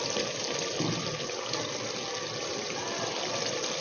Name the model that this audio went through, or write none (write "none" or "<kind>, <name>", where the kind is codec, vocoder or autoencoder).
none